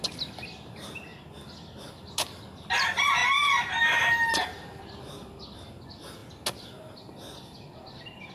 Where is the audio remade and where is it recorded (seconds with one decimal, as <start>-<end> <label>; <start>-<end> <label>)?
0.0-8.3 recorded